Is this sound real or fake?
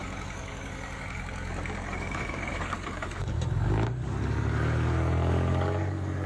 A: fake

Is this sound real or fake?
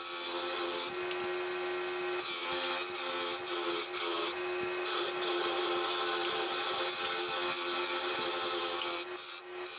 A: real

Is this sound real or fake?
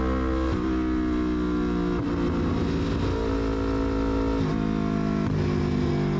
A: real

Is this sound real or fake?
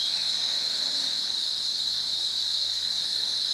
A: fake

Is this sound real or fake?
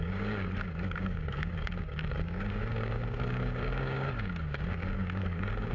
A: fake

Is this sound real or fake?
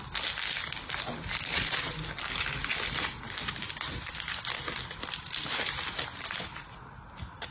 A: real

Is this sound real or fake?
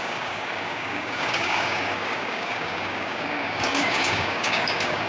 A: fake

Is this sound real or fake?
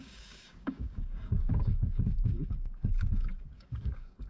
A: fake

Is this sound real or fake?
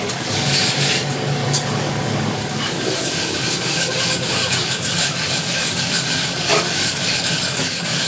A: fake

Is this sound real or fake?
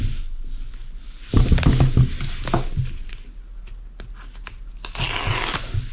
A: real